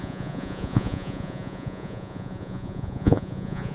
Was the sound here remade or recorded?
remade